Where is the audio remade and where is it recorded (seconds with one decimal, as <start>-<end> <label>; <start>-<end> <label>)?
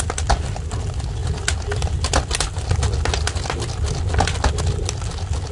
0.0-5.5 recorded